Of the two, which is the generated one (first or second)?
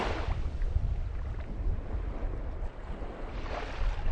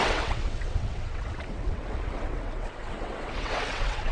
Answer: second